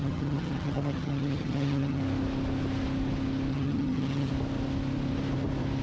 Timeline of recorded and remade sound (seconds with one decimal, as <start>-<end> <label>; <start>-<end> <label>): 0.0-2.0 remade; 2.0-3.5 recorded; 3.5-4.3 remade; 4.3-5.8 recorded